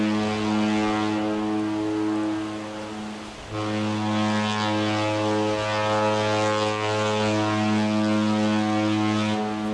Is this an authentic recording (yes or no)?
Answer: yes